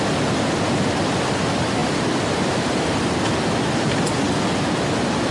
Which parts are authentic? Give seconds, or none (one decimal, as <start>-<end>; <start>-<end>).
0.0-1.8; 2.9-5.3